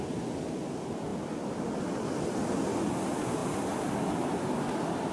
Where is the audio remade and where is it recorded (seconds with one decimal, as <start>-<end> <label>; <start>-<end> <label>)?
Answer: 0.0-5.1 recorded